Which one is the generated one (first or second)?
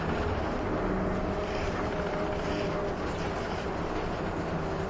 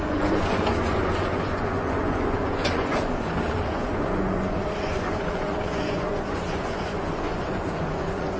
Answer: second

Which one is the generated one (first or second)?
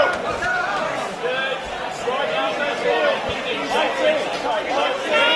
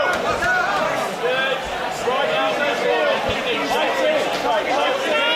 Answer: first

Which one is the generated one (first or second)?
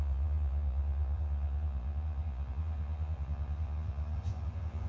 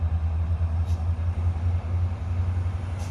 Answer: first